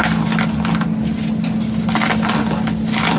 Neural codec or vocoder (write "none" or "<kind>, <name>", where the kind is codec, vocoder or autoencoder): none